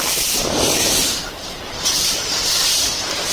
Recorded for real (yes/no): no